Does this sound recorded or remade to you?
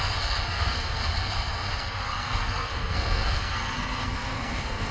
remade